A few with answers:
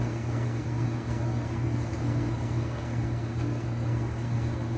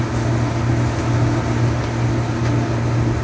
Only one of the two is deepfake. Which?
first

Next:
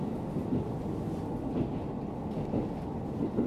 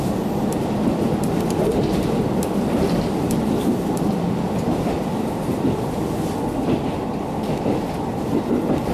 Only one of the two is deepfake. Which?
second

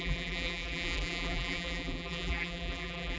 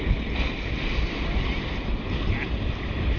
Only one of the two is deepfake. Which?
first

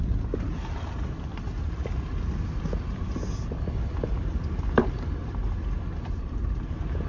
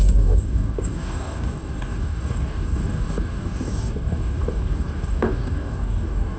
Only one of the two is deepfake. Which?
second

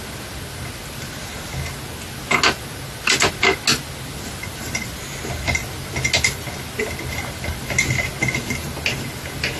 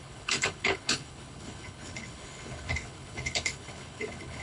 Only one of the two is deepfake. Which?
second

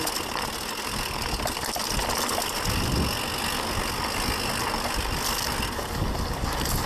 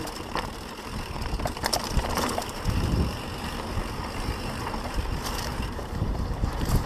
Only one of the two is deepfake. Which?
second